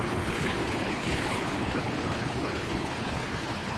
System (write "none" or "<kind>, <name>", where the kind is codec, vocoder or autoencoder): codec, HILCodec